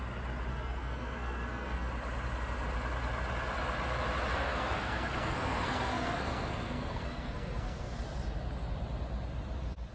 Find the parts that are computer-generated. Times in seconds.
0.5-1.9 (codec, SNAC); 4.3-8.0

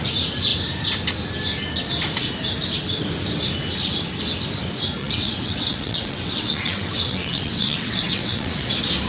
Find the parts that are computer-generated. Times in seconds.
5.0-8.7 (vocoder, WaveNeXt)